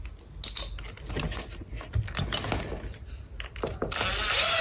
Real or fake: real